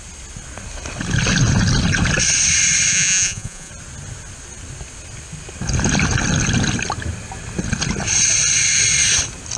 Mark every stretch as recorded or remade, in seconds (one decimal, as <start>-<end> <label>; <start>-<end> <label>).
0.0-2.9 recorded; 2.9-3.7 remade; 3.7-9.6 recorded